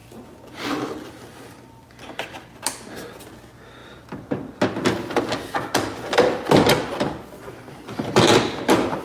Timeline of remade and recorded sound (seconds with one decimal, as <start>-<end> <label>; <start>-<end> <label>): 0.0-9.0 recorded